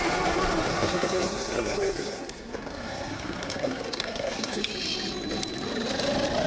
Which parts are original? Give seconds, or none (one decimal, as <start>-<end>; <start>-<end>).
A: 0.0-0.7; 4.6-6.5